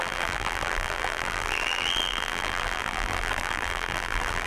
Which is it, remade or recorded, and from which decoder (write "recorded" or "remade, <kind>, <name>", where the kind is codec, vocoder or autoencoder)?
remade, vocoder, BigVGAN v2